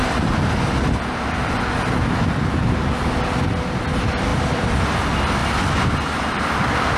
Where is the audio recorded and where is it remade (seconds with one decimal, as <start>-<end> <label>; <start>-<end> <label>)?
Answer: 0.0-7.0 recorded